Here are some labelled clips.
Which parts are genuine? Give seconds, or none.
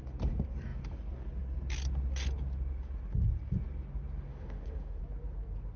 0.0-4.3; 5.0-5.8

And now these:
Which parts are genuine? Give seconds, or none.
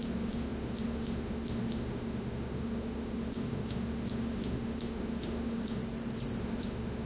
5.8-6.4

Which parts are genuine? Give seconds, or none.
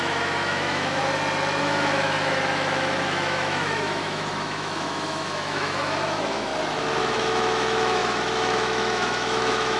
1.0-1.6; 6.5-7.0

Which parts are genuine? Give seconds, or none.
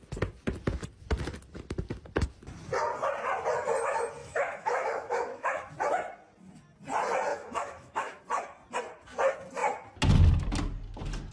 0.0-4.2; 5.7-7.3; 8.2-11.3